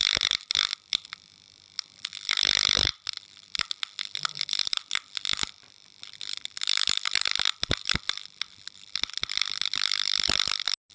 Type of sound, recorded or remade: recorded